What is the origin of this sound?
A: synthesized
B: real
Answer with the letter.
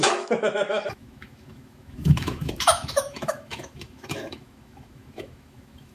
A